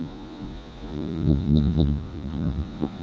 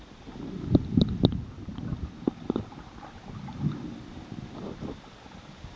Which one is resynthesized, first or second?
first